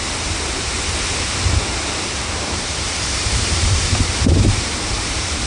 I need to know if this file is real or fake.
fake